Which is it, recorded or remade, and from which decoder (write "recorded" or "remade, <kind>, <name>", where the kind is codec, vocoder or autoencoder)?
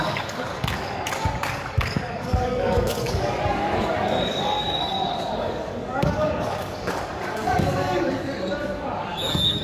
remade, codec, DAC